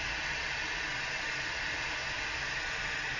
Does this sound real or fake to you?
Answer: real